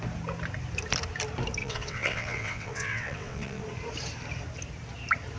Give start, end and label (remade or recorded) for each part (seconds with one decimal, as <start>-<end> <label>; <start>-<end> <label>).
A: 0.0-1.6 recorded; 1.6-3.6 remade; 3.6-5.4 recorded